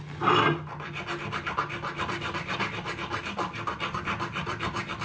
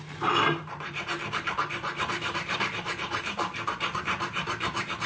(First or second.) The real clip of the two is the first